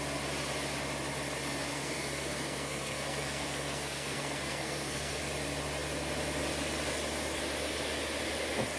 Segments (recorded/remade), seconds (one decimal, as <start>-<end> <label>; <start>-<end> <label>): 0.0-1.7 recorded; 1.7-5.2 remade; 5.2-8.8 recorded